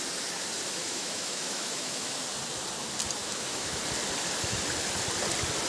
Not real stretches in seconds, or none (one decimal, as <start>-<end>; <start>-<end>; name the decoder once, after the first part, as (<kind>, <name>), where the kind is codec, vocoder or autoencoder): 0.8-2.2 (autoencoder, DAC-VAE); 3.2-3.8